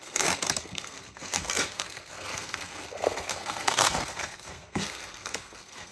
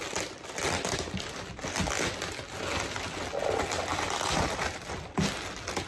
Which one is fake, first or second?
first